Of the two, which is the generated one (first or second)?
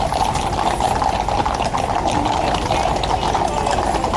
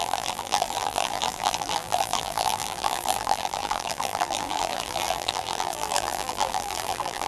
second